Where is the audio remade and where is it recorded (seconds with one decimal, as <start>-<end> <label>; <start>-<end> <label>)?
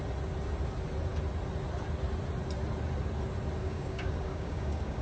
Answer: 0.0-3.6 recorded; 3.6-5.0 remade